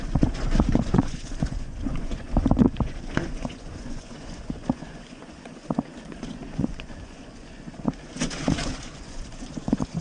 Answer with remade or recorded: remade